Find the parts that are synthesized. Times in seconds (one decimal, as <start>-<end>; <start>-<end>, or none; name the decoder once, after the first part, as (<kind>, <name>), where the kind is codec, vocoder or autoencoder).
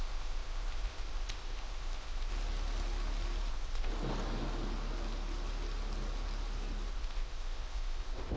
0.0-2.3 (codec, ZipCodec); 3.5-3.9; 6.9-8.4